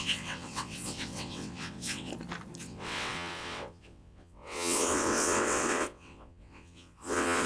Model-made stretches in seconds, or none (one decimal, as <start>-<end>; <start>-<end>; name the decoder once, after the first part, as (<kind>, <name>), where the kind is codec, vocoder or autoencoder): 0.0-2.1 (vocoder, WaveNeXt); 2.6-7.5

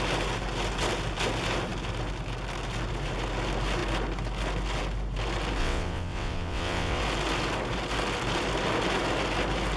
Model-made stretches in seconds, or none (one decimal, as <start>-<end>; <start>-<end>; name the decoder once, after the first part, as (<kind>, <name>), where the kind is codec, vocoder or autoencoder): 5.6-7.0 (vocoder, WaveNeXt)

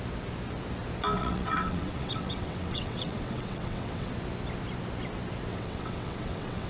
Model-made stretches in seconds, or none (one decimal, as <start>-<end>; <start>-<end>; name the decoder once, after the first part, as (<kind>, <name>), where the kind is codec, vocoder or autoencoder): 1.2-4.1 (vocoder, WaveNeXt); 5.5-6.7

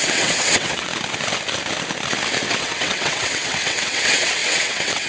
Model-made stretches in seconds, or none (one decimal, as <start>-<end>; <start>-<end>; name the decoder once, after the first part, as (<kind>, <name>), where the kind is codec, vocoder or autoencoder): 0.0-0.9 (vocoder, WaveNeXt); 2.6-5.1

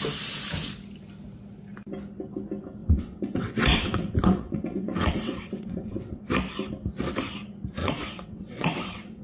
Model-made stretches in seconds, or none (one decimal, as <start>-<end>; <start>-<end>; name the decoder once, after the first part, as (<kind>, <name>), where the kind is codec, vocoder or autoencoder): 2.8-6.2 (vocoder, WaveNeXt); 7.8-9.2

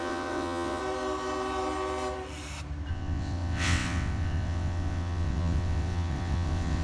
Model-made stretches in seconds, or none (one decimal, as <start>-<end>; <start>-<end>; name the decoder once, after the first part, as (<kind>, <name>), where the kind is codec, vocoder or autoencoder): 0.0-0.8 (vocoder, WaveNeXt); 2.9-6.8